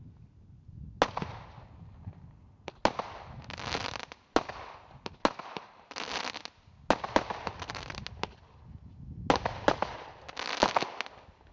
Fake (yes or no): no